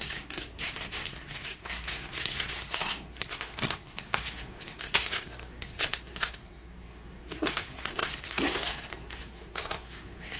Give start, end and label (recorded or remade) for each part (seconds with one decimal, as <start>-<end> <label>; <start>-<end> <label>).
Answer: 0.0-10.4 remade

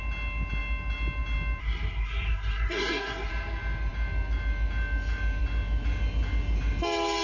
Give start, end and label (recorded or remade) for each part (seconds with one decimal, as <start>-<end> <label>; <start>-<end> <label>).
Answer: 0.0-1.6 recorded; 1.6-3.3 remade; 3.3-7.2 recorded